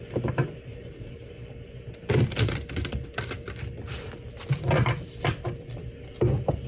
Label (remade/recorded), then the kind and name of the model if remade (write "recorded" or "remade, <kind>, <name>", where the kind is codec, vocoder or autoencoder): remade, vocoder, BigVGAN v2